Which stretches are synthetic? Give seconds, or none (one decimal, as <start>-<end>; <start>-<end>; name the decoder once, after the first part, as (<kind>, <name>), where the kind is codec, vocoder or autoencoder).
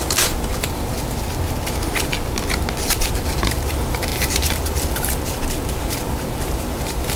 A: 0.0-0.5 (vocoder, BigVGAN v2); 3.1-7.2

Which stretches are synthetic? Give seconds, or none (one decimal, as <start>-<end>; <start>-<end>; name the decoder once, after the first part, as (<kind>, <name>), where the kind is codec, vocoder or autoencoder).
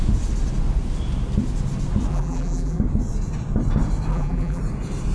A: 2.1-2.8 (vocoder, BigVGAN v2); 4.1-4.6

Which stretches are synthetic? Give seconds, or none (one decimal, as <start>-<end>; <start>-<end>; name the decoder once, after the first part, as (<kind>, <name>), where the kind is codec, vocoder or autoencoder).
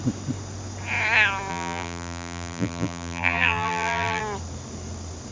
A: 1.5-4.2 (vocoder, BigVGAN v2)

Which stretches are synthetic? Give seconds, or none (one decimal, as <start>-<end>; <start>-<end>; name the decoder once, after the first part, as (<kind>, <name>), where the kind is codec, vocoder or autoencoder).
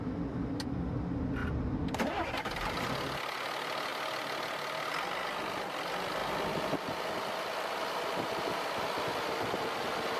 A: 1.4-2.3 (vocoder, BigVGAN v2); 6.2-10.2